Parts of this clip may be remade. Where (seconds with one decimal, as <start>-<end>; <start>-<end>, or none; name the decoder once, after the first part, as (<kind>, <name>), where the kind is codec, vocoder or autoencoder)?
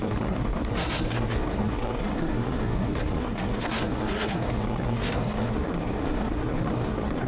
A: 0.0-7.3 (codec, SNAC)